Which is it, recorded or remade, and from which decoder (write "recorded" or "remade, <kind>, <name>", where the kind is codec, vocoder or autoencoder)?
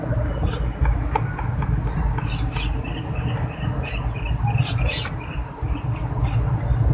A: recorded